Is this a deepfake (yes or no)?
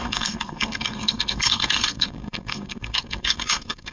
yes